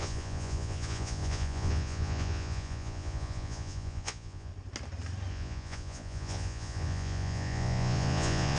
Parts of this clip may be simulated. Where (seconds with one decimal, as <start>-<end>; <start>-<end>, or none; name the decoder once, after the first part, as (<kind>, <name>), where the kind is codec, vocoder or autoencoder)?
0.0-4.5 (vocoder, Vocos); 5.3-8.6